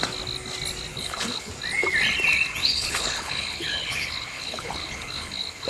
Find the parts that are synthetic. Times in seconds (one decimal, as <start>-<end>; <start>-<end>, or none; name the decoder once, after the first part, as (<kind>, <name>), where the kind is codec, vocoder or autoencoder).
0.9-1.5 (codec, HILCodec); 2.6-5.7

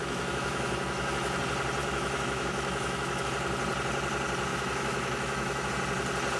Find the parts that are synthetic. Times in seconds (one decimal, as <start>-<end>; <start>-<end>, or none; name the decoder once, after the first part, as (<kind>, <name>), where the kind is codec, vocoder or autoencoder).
0.0-1.4 (autoencoder, DAC-VAE); 1.8-3.3; 4.5-5.7